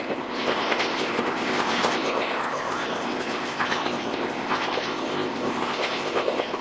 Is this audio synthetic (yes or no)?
yes